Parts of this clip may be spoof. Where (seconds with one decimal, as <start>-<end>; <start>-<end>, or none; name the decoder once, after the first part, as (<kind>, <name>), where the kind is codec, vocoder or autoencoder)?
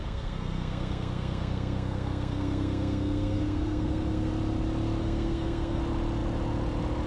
0.0-4.3 (codec, SNAC); 5.0-5.8